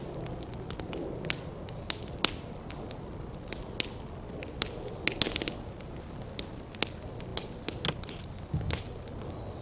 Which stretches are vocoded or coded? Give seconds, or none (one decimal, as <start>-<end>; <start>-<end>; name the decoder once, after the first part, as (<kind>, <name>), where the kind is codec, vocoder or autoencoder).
none